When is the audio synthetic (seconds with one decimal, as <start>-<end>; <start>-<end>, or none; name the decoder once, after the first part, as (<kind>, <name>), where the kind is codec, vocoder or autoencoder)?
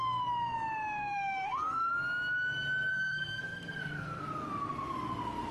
1.0-1.9 (codec, SNAC); 2.9-4.2